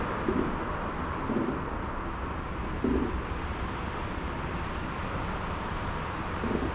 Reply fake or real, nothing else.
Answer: real